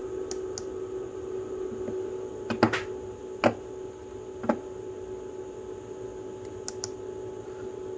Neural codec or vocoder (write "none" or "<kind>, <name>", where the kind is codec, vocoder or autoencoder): none